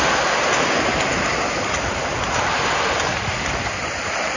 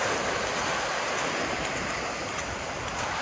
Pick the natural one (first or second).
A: first